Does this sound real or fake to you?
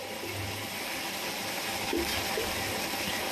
real